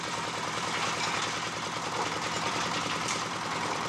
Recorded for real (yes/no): no